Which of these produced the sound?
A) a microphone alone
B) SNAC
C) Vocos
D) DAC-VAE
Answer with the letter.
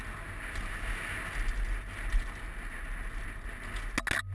A